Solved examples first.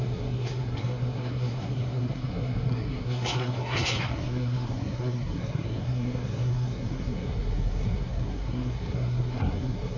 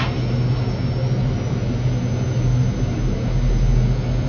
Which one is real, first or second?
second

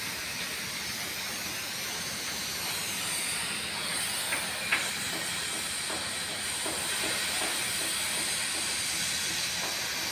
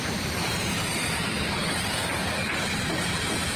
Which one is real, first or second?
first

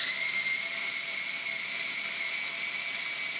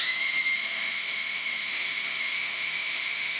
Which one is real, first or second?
first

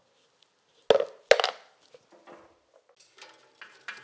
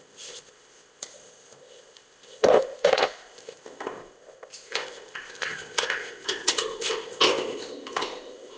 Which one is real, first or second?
first